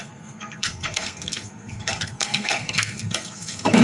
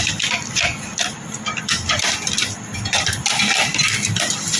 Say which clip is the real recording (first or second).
second